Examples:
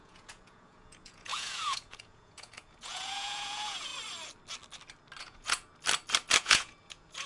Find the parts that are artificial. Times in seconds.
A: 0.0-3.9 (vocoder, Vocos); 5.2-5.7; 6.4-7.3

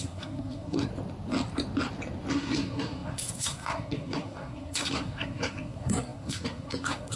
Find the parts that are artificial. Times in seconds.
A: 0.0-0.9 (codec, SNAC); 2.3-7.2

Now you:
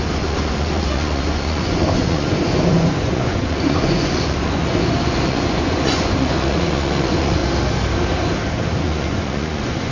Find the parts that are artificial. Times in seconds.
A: 0.0-7.4 (vocoder, Vocos); 8.8-9.9

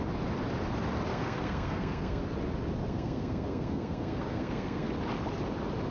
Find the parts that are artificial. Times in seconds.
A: 1.1-2.2 (codec, SNAC); 2.8-4.9

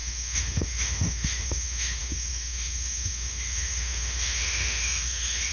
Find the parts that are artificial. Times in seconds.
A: 0.0-5.5 (autoencoder, DAC-VAE)

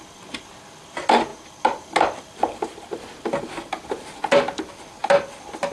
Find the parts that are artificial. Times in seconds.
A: none

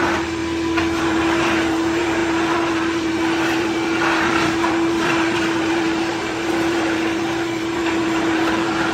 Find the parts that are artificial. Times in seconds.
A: 0.0-0.4 (vocoder, BigVGAN v2); 1.0-8.9